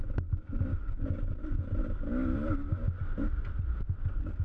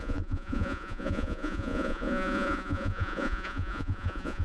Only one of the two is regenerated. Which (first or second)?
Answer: second